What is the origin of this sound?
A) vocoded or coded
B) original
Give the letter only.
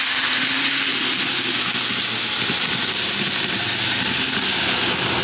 B